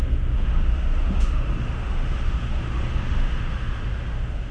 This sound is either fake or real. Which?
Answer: fake